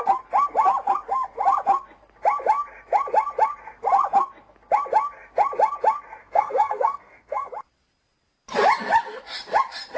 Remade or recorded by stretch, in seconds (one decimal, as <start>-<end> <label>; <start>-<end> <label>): 0.0-6.2 recorded; 6.2-7.5 remade; 7.5-10.0 recorded